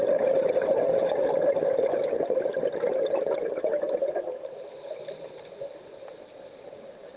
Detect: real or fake real